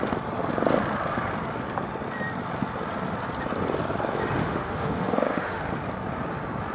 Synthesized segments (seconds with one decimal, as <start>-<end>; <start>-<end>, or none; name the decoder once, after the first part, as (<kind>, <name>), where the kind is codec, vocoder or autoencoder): 4.4-5.6 (autoencoder, DAC-VAE)